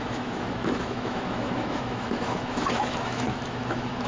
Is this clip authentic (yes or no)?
no